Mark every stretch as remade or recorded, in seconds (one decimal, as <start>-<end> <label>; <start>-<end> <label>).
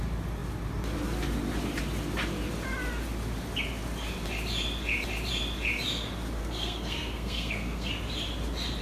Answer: 0.0-6.4 recorded; 6.4-7.9 remade; 7.9-8.8 recorded